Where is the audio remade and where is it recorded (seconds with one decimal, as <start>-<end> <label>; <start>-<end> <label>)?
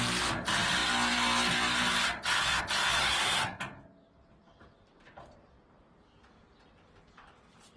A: 0.0-3.0 recorded; 3.0-3.6 remade; 3.6-7.8 recorded